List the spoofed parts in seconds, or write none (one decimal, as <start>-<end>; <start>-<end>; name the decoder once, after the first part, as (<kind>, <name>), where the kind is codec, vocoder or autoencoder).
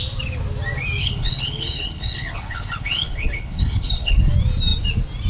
1.0-4.2 (codec, HILCodec)